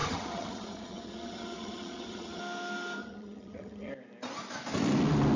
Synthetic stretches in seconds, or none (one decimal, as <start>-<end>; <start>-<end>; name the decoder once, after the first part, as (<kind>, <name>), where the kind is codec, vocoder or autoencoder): 0.0-2.4 (vocoder, HiFi-GAN); 3.0-3.9